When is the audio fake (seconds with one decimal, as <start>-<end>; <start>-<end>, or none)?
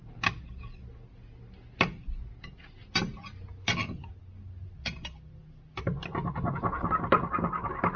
none